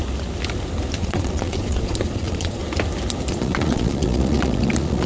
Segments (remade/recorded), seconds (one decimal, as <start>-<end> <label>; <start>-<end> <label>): 0.0-1.0 recorded; 1.0-2.6 remade; 2.6-3.3 recorded; 3.3-5.1 remade